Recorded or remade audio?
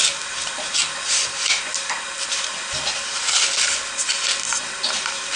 recorded